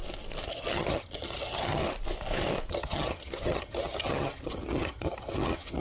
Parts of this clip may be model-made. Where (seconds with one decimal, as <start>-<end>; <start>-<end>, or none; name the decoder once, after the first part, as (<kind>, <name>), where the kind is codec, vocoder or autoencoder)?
0.5-1.8 (vocoder, HiFi-GAN); 2.7-5.8